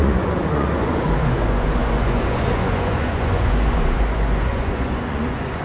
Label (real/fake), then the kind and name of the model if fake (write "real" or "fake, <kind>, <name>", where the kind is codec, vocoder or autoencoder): fake, vocoder, Vocos